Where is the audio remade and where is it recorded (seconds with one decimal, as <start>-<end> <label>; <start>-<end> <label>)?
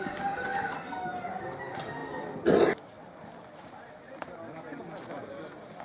0.0-5.8 recorded